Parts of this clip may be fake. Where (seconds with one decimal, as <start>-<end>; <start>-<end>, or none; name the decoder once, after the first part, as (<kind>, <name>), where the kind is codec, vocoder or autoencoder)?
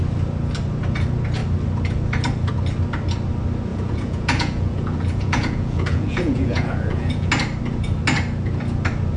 3.7-7.3 (vocoder, Vocos)